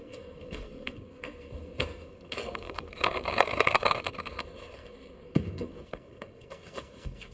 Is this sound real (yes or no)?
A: no